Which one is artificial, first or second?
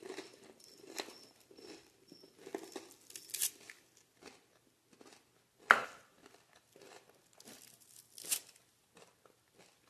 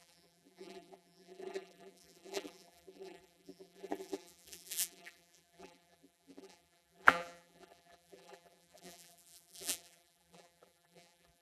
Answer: second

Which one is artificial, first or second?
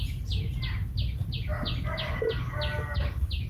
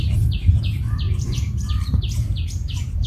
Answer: second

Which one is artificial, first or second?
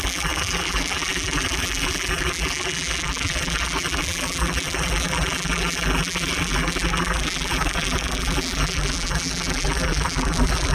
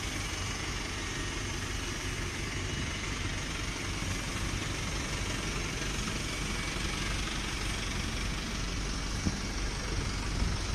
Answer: first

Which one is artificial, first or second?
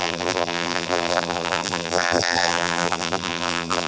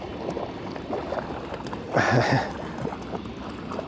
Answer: first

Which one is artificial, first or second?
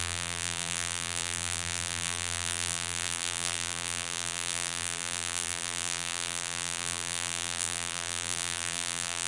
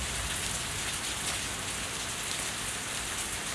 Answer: first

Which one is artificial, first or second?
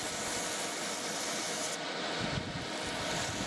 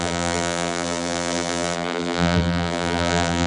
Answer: second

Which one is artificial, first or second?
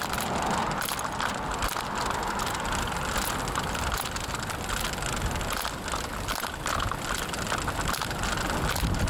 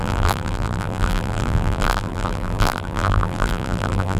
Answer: second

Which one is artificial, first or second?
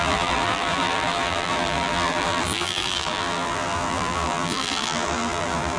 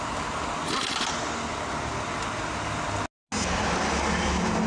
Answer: first